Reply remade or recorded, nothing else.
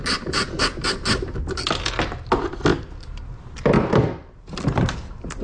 recorded